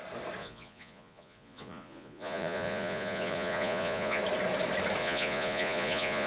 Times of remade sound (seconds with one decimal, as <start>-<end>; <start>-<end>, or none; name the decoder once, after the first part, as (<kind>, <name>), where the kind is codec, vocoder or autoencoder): 0.4-4.2 (vocoder, Vocos); 5.0-6.3